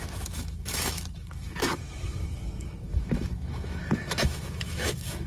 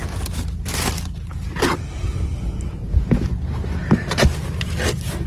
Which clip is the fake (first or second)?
first